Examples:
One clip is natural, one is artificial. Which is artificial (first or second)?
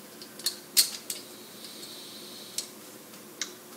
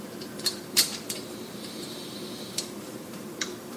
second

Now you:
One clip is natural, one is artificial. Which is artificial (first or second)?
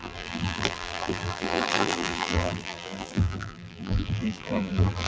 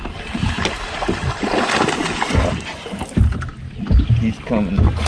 first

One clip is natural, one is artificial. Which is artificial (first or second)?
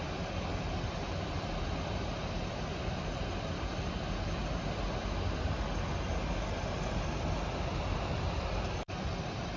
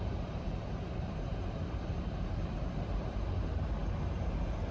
second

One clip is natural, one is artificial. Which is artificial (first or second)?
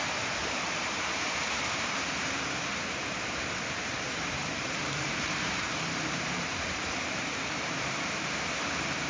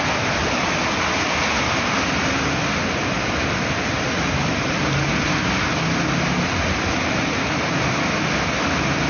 first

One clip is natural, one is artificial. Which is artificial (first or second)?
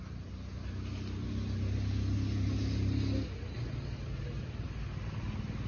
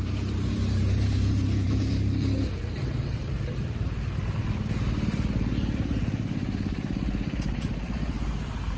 second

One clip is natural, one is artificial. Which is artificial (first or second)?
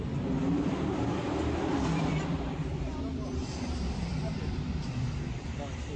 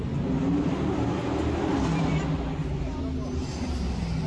first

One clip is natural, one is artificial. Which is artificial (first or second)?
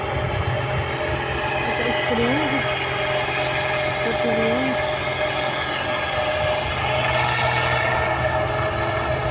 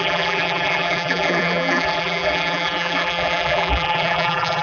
second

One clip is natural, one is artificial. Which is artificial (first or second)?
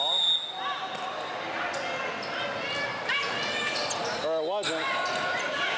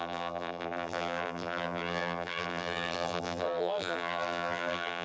second